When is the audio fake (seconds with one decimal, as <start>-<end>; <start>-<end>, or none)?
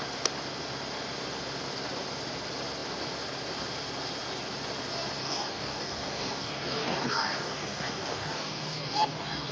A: 5.2-9.5